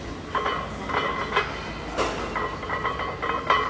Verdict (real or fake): real